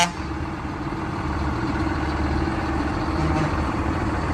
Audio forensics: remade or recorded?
remade